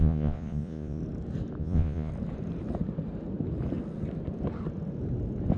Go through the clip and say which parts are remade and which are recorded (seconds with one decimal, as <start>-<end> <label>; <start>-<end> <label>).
0.0-1.0 remade; 1.0-1.6 recorded; 1.6-2.1 remade; 2.1-5.6 recorded

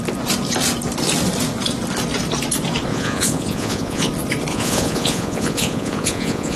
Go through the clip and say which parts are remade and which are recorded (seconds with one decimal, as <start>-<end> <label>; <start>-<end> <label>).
0.0-2.9 recorded; 2.9-4.1 remade; 4.1-4.5 recorded; 4.5-6.6 remade

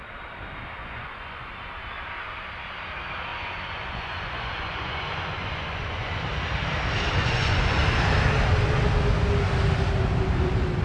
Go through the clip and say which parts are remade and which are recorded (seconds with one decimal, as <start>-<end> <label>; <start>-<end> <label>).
0.0-0.8 recorded; 0.8-1.5 remade; 1.5-3.3 recorded; 3.3-6.1 remade; 6.1-7.2 recorded; 7.2-7.8 remade; 7.8-10.8 recorded

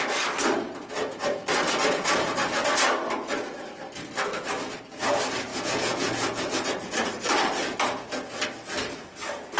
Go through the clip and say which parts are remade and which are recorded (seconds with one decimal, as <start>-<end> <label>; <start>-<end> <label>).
0.0-5.5 recorded; 5.5-6.4 remade; 6.4-9.6 recorded